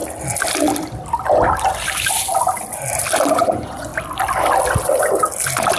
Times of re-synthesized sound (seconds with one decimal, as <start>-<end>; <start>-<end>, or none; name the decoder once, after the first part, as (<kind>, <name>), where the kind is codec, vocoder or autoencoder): 3.3-3.9 (vocoder, Vocos)